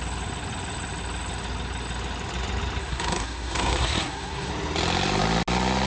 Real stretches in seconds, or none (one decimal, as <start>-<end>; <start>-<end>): 0.0-2.8; 4.5-5.9

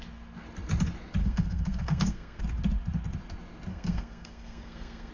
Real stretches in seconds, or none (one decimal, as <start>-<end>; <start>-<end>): 0.0-1.2; 2.4-3.7

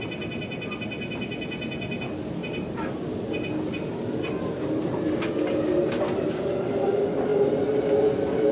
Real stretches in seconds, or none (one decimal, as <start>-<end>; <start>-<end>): 0.0-8.5

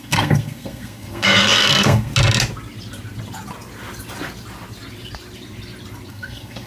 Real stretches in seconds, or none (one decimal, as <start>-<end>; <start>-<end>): 2.1-6.1

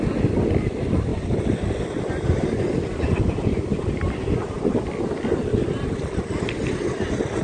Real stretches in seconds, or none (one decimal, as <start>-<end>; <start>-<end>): 0.0-7.4

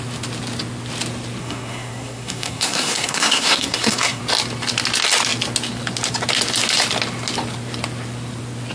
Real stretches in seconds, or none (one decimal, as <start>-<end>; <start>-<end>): 0.0-1.4; 4.2-8.7